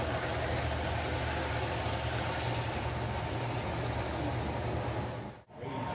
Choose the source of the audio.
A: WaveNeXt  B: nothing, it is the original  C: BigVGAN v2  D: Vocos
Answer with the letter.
B